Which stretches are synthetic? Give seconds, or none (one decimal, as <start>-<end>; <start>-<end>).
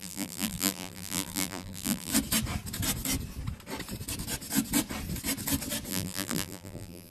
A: 0.0-2.1; 5.9-7.1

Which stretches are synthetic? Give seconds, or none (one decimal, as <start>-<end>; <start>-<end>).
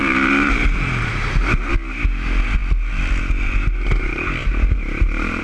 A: 0.0-1.7; 4.4-5.4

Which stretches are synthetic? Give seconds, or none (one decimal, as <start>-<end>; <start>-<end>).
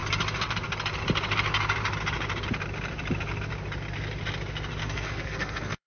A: 4.8-5.9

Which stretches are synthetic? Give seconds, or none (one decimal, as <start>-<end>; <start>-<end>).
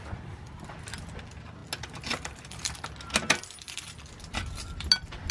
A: none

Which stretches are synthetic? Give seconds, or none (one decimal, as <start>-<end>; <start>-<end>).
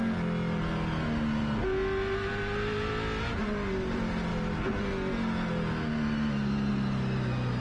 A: none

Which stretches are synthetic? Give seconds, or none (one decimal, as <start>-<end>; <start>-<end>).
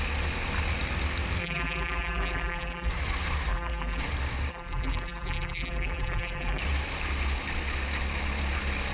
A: 1.4-2.9; 3.5-4.0; 4.5-6.6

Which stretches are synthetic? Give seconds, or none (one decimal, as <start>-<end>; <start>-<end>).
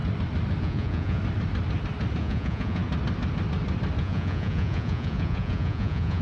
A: 0.6-1.2; 2.2-2.8; 4.0-6.2